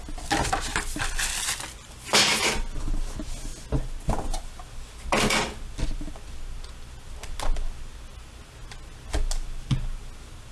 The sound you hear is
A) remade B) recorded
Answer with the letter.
B